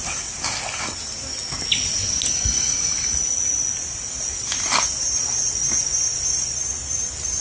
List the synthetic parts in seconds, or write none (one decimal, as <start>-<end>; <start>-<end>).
none